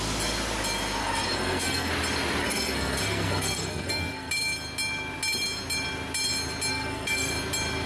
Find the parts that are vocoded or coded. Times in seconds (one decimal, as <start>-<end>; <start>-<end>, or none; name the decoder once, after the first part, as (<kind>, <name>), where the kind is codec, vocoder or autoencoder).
1.0-1.9 (codec, SNAC); 2.4-4.3; 6.7-7.3